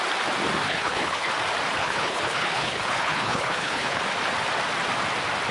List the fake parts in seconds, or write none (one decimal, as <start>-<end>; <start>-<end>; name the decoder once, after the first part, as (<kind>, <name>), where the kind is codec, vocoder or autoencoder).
0.6-1.3 (codec, HILCodec); 1.8-4.0